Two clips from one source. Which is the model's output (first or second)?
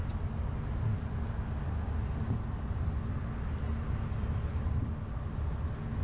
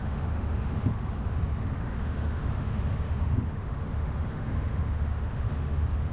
second